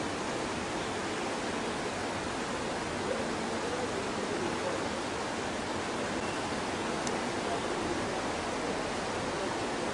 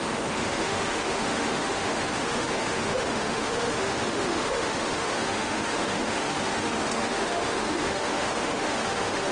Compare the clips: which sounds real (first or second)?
first